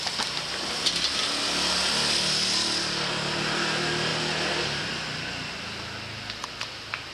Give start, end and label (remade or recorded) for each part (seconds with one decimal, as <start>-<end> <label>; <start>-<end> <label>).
0.0-7.1 recorded